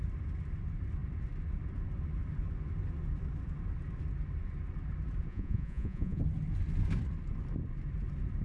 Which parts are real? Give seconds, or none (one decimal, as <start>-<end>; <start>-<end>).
0.0-5.3; 6.2-8.4